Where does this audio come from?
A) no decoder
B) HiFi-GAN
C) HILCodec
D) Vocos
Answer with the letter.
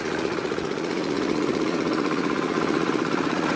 D